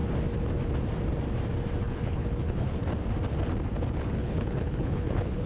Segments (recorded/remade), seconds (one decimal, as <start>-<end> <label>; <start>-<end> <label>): 0.0-1.8 recorded; 1.8-2.8 remade; 2.8-4.2 recorded; 4.2-5.5 remade

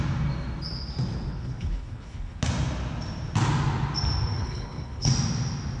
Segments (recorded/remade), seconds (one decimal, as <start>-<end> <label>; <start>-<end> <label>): 0.0-1.3 recorded; 1.3-2.4 remade; 2.4-4.4 recorded; 4.4-5.1 remade; 5.1-5.8 recorded